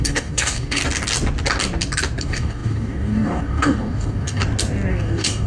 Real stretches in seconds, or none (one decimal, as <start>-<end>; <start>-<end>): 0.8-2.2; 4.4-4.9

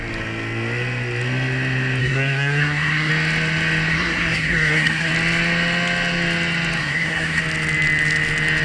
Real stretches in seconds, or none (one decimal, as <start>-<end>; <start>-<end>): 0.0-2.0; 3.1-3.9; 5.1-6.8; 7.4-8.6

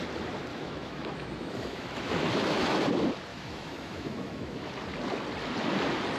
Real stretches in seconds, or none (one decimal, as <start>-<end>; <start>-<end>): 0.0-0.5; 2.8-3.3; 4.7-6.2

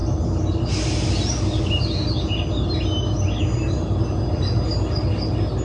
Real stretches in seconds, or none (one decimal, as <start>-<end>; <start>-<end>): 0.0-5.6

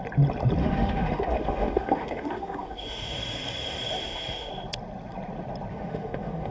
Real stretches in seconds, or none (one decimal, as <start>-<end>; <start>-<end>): 0.0-0.6; 4.5-5.7